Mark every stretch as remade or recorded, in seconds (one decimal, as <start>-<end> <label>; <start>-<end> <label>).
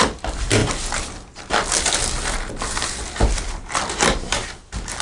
0.0-0.6 remade; 0.6-3.6 recorded; 3.6-5.0 remade